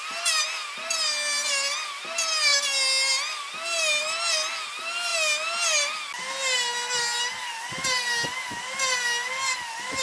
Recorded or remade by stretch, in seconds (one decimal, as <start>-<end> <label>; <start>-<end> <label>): 0.0-10.0 recorded